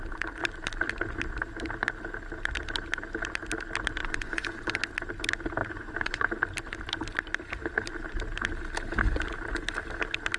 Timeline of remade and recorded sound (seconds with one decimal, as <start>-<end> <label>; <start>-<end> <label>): 0.0-4.0 recorded; 4.0-4.8 remade; 4.8-5.6 recorded; 5.6-6.3 remade; 6.3-10.4 recorded